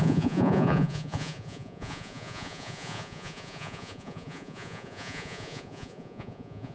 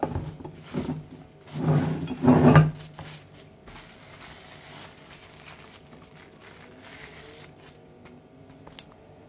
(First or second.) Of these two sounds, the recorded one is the second